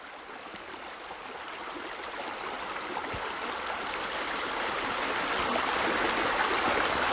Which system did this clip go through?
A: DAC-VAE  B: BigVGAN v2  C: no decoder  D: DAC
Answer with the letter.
C